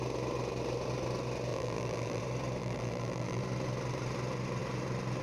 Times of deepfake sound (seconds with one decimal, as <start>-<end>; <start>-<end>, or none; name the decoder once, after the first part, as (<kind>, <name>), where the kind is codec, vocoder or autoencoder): 1.5-2.2 (vocoder, BigVGAN v2); 2.6-3.4